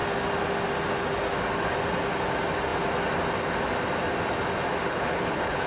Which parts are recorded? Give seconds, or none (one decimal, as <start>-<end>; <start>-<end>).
0.0-4.9